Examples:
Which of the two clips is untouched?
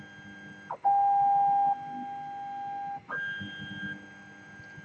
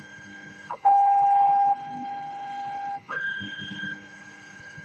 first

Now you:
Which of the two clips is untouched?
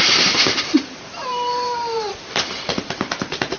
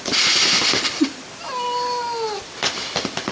second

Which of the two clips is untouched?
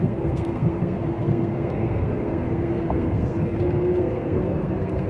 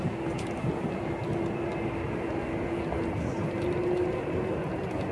second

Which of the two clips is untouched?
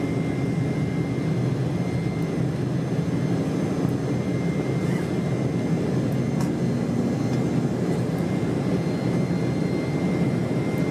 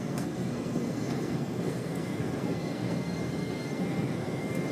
first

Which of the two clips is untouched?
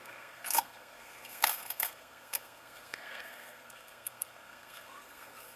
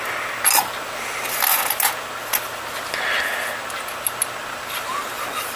second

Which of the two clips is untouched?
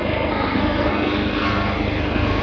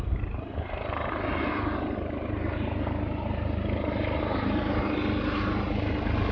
second